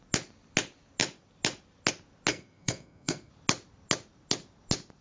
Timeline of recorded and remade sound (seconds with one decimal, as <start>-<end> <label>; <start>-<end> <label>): 0.0-2.3 recorded; 2.3-3.3 remade; 3.3-5.0 recorded